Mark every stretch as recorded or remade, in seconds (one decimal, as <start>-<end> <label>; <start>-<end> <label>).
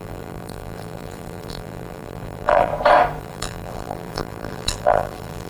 0.0-2.7 remade; 2.7-3.2 recorded; 3.2-5.5 remade